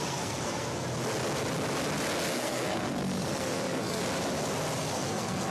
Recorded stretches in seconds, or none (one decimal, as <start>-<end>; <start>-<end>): 0.7-2.3; 4.0-4.9